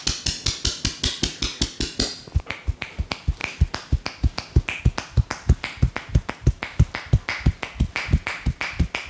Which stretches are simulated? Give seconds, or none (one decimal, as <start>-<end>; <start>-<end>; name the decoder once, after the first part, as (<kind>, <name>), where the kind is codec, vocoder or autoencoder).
none